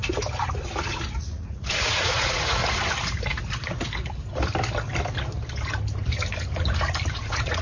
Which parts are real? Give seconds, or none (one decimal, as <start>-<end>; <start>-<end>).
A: 0.0-1.2; 2.6-7.1